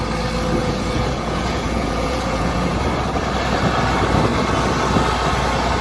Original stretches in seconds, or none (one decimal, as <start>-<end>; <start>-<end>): 0.0-0.6; 2.8-5.8